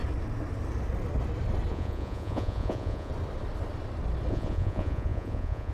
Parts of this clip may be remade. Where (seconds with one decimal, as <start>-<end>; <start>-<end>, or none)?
1.7-3.1; 4.3-5.7